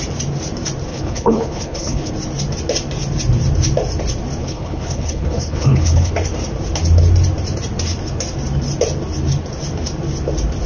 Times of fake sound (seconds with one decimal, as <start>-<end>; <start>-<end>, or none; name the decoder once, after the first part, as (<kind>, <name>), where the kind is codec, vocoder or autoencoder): 0.9-2.1 (codec, HILCodec); 4.4-6.1